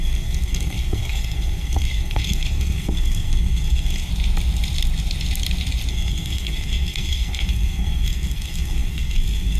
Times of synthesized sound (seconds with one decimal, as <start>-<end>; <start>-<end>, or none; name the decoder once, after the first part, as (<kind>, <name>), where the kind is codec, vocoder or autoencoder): 0.0-4.1 (codec, SNAC); 5.9-9.6